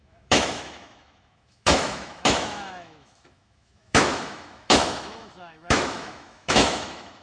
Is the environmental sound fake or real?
fake